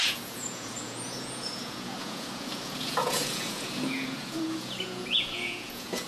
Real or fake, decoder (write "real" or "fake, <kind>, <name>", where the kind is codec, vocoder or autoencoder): fake, vocoder, Vocos